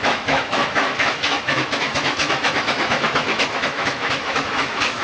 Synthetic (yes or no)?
yes